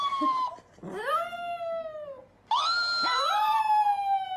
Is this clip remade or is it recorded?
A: recorded